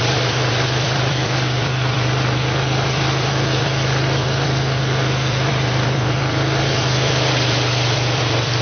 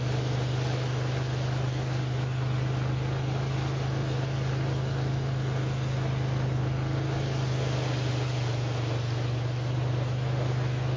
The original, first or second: second